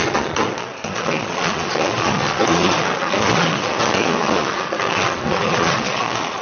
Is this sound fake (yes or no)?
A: yes